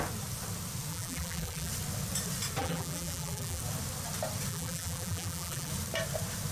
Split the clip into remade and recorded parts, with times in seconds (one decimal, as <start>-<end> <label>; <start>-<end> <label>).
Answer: 0.0-0.9 recorded; 0.9-1.7 remade; 1.7-2.6 recorded; 2.6-3.6 remade; 3.6-4.5 recorded; 4.5-5.7 remade; 5.7-6.5 recorded